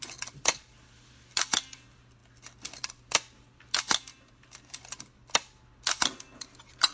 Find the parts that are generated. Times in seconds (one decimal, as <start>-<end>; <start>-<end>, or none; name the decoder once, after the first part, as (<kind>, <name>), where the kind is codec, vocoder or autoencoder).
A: 4.1-4.8 (vocoder, BigVGAN v2)